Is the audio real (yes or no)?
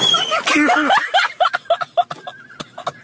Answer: yes